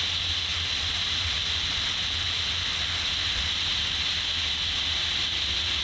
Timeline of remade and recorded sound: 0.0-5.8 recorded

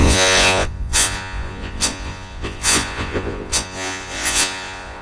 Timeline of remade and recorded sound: 0.0-5.0 remade